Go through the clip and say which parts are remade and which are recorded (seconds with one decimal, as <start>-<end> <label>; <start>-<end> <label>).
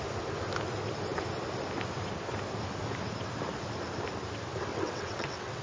0.0-4.7 recorded; 4.7-5.6 remade